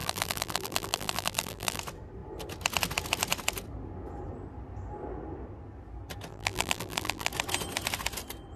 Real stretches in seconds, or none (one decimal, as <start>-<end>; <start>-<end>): 1.8-6.3; 7.3-8.6